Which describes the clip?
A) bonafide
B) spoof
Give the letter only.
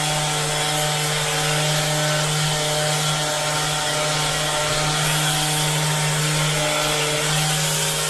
A